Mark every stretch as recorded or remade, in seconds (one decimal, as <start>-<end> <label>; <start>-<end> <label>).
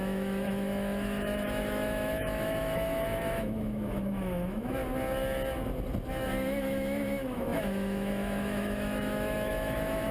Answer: 0.0-4.8 remade; 4.8-6.1 recorded; 6.1-10.1 remade